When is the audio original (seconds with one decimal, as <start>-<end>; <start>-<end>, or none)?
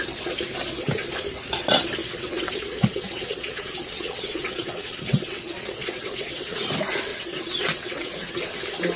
0.0-2.0; 6.6-7.1; 8.4-9.0